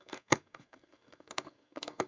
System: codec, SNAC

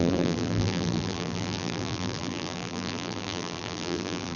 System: vocoder, BigVGAN v2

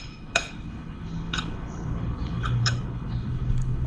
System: codec, HILCodec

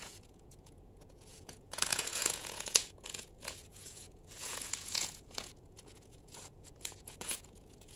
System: vocoder, Vocos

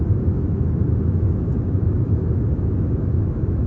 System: autoencoder, DAC-VAE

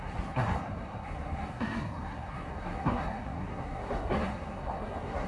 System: codec, SNAC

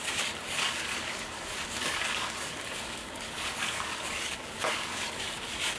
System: codec, DAC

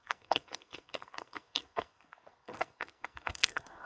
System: codec, SNAC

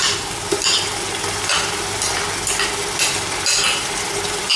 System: none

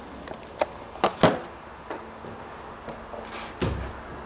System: none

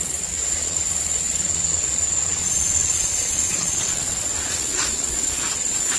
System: vocoder, Vocos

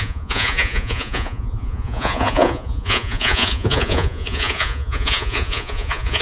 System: vocoder, Vocos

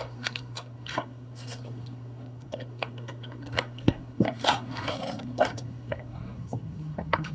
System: codec, SNAC